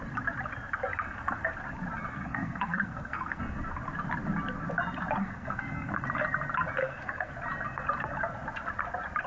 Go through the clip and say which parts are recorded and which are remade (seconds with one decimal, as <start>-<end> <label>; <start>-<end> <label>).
0.0-2.1 recorded; 2.1-3.4 remade; 3.4-5.2 recorded; 5.2-5.9 remade; 5.9-6.8 recorded; 6.8-7.3 remade; 7.3-9.3 recorded